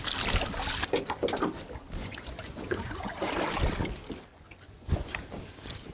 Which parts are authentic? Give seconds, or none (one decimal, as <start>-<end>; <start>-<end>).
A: 0.0-2.0; 3.3-4.3; 5.1-5.9